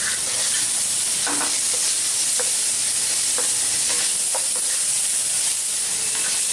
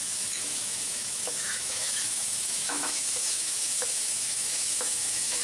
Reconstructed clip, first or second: second